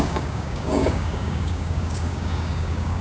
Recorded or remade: remade